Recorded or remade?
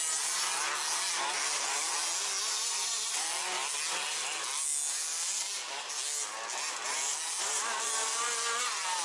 recorded